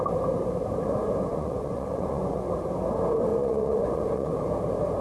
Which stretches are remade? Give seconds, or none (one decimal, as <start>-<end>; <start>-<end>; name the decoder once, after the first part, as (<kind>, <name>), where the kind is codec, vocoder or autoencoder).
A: 1.3-2.5 (vocoder, Vocos); 3.3-4.3